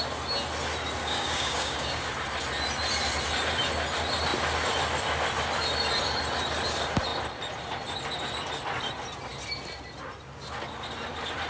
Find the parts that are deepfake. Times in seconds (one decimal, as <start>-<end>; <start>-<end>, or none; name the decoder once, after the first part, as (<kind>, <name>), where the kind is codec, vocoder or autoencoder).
1.0-2.1 (codec, DAC)